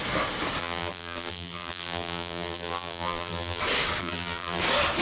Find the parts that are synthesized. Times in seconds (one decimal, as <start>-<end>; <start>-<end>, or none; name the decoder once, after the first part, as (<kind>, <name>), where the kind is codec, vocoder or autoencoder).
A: 0.6-3.6 (vocoder, BigVGAN v2); 4.0-4.6